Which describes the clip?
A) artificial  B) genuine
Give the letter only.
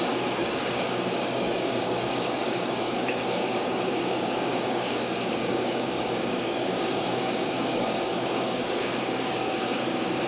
A